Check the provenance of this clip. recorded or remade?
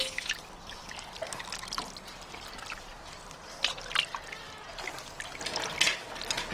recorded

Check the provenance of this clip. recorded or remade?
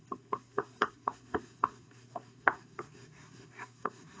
remade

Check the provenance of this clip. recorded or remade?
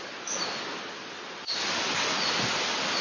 recorded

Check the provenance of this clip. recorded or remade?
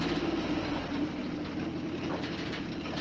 recorded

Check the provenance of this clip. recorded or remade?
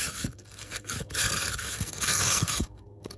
remade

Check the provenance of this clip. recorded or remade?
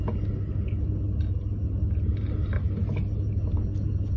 recorded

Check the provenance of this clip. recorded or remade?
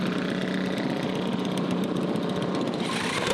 recorded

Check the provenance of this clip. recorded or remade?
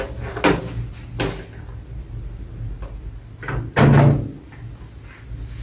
recorded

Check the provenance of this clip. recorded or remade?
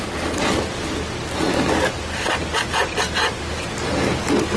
recorded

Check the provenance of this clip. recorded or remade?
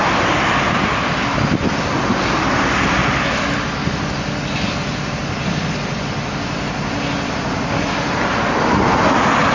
recorded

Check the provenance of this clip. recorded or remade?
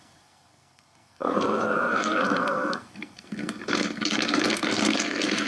remade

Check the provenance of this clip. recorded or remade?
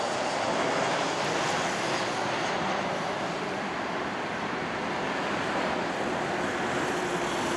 recorded